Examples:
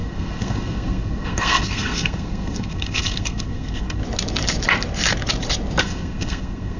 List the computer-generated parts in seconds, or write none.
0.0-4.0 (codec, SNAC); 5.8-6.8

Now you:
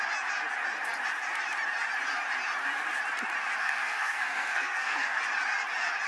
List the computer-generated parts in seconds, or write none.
3.6-5.2 (codec, SNAC)

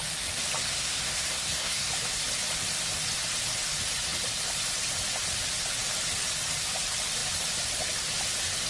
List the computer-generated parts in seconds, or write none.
0.7-1.9 (codec, SNAC)

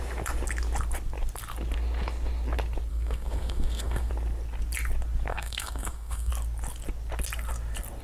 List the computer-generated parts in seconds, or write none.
2.9-4.1 (codec, SNAC); 5.3-6.3

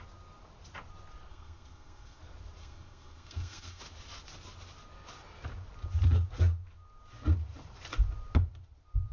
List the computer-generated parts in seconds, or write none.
1.3-2.2 (codec, SNAC); 2.6-3.8

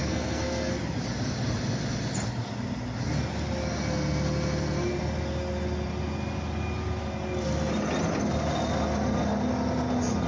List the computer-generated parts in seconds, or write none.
0.0-0.7 (codec, SNAC)

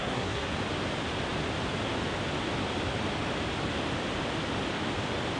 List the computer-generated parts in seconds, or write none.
0.0-0.5 (codec, SNAC)